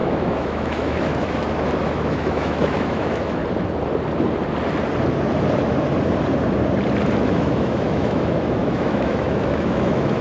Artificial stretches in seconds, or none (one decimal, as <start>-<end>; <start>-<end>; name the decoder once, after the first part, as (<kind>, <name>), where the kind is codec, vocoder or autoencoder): 0.0-3.4 (autoencoder, DAC-VAE); 7.3-10.2